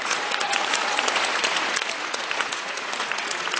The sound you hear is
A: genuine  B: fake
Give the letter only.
B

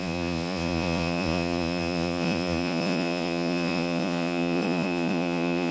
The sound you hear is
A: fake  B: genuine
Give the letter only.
A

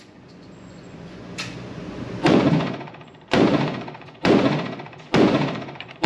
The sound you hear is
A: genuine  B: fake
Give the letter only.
B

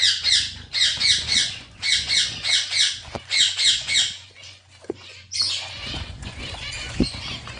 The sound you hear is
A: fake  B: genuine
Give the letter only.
A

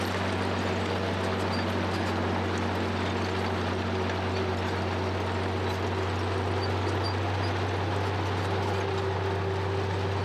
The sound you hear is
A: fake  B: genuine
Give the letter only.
B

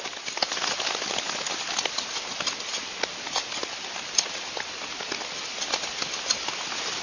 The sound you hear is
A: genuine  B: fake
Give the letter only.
A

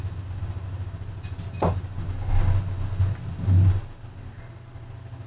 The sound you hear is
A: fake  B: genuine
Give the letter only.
B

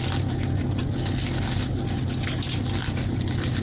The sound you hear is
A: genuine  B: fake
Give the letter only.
A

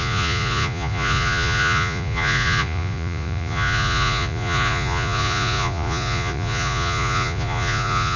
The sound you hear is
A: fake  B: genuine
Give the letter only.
A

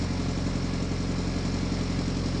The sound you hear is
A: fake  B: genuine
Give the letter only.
B